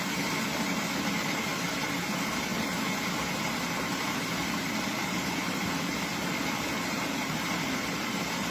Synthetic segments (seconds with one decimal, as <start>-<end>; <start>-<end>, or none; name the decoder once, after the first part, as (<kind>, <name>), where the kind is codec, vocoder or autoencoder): 0.0-1.5 (vocoder, BigVGAN v2); 2.1-8.5